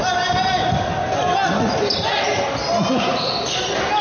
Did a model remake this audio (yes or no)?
no